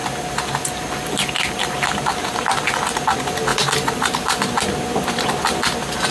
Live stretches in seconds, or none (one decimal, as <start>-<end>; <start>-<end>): 0.0-3.5; 4.4-6.1